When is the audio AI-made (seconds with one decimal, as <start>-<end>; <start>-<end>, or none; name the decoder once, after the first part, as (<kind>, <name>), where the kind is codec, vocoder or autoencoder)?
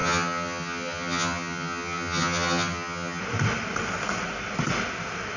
0.0-3.2 (vocoder, HiFi-GAN)